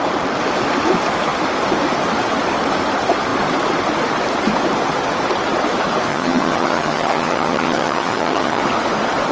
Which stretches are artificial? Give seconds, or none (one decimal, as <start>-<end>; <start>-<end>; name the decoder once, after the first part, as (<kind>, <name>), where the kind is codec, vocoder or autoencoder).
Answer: 6.1-8.6 (vocoder, HiFi-GAN)